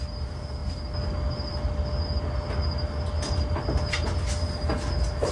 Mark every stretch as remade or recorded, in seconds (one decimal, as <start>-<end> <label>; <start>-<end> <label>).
0.0-5.3 recorded